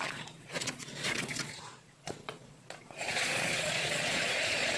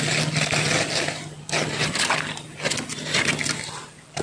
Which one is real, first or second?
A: second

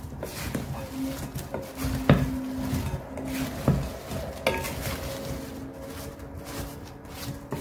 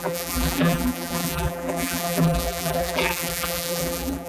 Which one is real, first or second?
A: first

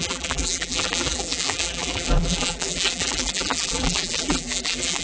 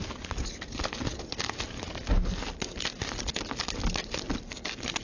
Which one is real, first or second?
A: second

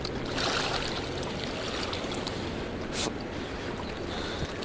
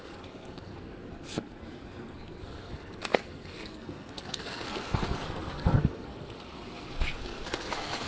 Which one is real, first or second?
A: first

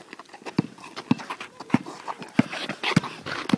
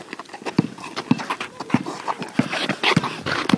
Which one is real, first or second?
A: first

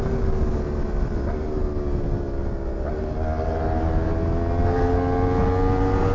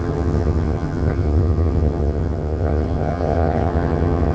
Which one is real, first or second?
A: first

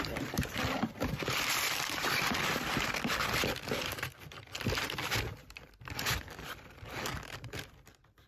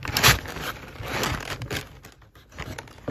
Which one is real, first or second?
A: second